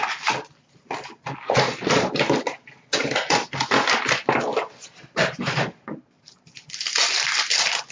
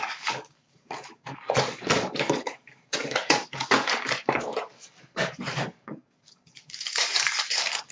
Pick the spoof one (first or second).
second